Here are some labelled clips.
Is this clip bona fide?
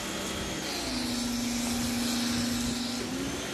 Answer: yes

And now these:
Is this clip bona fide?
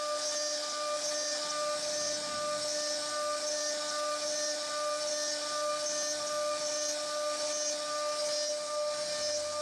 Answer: yes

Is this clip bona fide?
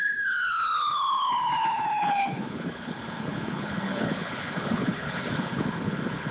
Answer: no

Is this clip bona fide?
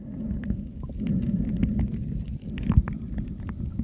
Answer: yes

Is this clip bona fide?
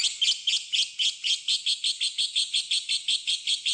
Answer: yes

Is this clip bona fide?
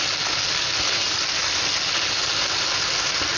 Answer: yes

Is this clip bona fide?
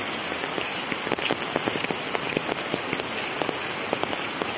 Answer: yes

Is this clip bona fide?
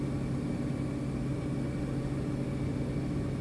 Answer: yes